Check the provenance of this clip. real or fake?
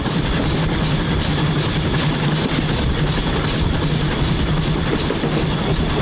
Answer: real